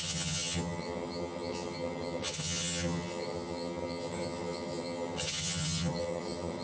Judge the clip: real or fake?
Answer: fake